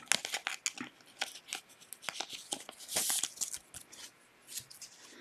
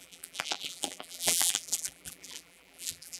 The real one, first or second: first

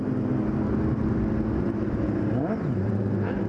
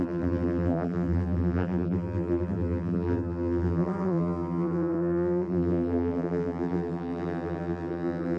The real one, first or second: first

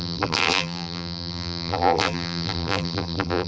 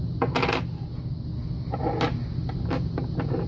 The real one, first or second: second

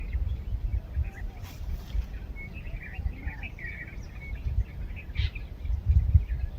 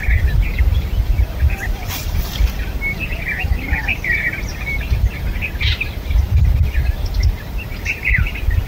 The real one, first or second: first